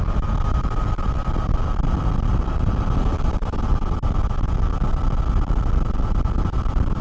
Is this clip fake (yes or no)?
no